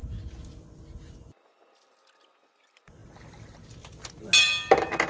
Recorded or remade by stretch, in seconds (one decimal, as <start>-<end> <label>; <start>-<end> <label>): 0.0-5.1 recorded